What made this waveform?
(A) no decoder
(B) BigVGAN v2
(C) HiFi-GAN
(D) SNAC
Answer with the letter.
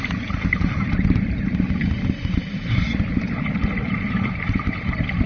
B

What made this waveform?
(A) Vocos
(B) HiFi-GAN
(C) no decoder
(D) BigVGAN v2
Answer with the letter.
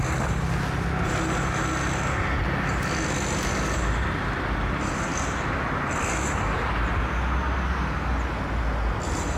C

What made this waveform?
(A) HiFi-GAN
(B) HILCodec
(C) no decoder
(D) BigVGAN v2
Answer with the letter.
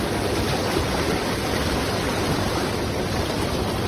C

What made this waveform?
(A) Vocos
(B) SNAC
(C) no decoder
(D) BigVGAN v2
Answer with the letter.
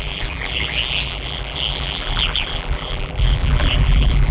D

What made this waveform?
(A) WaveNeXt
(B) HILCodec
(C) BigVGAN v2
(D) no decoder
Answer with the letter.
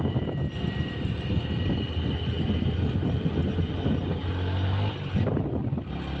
D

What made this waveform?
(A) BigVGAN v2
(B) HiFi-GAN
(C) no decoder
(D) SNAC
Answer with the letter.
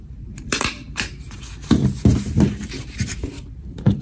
A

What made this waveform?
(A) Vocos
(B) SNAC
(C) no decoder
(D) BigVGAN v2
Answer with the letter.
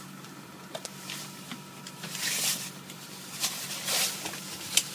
D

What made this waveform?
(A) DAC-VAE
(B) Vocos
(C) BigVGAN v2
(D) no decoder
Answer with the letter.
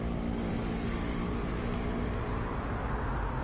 D